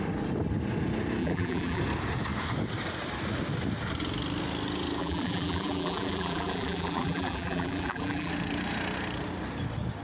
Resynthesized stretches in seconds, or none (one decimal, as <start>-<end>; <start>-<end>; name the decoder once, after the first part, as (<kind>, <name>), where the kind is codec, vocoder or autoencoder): 1.2-1.8 (vocoder, BigVGAN v2); 5.0-8.3